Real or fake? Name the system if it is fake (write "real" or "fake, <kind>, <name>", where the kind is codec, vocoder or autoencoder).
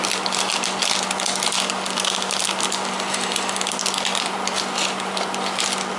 real